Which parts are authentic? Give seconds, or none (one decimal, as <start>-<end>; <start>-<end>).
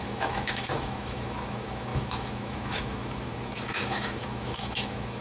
none